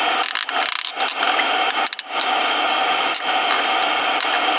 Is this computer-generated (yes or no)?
no